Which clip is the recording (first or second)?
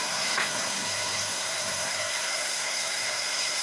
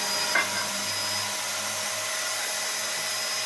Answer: second